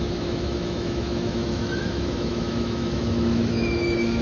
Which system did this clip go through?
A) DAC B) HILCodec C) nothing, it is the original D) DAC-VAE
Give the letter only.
D